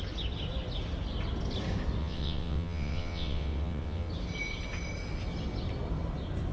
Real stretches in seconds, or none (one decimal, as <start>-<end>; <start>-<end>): 0.0-2.0; 4.1-6.5